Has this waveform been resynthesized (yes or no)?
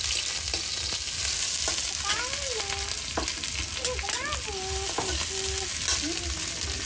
no